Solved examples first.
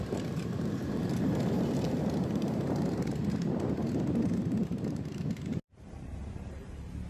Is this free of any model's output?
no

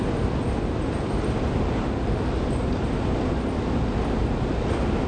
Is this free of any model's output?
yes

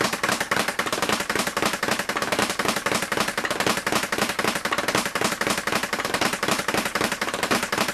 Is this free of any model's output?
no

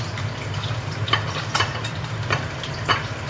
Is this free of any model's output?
no